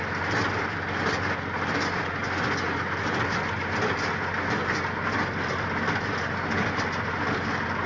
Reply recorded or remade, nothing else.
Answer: recorded